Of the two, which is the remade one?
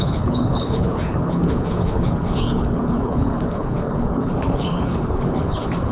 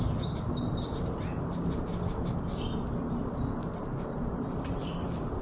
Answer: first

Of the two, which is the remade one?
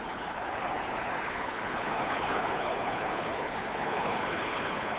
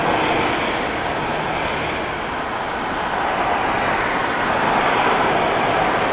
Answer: first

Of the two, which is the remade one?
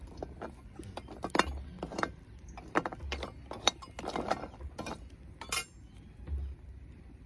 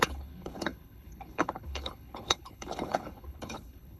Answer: second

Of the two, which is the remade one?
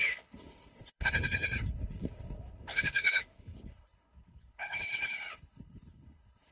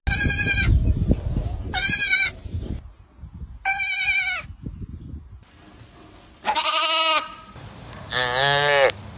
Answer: first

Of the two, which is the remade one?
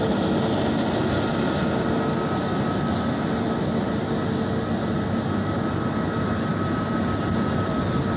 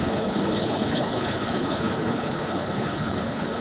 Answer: second